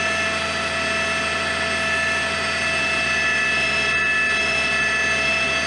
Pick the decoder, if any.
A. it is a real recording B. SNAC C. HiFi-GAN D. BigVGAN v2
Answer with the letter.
A